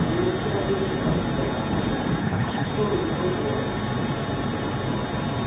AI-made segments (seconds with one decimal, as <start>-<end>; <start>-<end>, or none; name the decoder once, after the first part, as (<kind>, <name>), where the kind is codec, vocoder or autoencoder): 2.2-2.7 (codec, HILCodec)